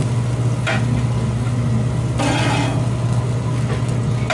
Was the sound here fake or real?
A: real